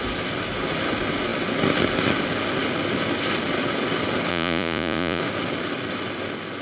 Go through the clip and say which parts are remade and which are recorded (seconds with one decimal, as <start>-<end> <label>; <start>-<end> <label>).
0.0-4.3 recorded; 4.3-5.2 remade; 5.2-6.6 recorded